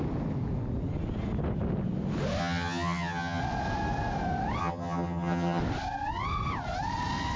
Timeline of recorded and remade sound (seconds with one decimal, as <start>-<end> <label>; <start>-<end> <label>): 0.0-2.4 recorded; 2.4-3.4 remade; 3.4-4.6 recorded; 4.6-5.6 remade; 5.6-7.4 recorded